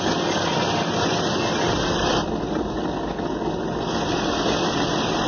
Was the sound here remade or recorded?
recorded